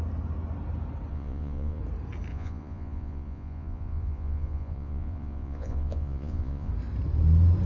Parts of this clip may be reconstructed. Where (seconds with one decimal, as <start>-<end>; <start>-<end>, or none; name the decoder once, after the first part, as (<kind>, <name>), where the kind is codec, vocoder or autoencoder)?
1.1-1.8 (vocoder, Vocos); 2.3-6.7